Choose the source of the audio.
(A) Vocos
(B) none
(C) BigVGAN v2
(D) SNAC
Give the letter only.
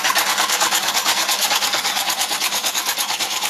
D